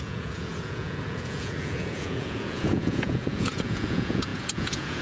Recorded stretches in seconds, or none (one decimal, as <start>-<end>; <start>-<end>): none